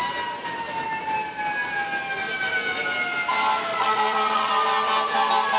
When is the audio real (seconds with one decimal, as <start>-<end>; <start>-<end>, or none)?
0.0-3.7; 4.5-5.6